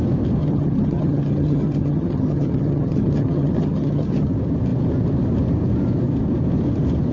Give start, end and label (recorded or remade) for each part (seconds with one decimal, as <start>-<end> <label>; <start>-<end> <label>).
0.0-0.4 recorded; 0.4-4.3 remade; 4.3-7.1 recorded